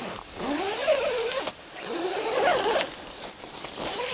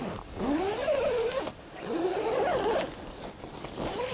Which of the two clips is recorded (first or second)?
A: second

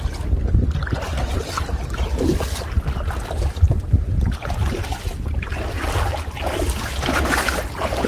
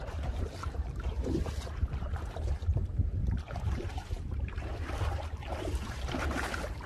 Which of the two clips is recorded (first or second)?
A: first